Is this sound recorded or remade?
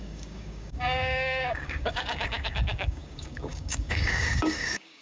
remade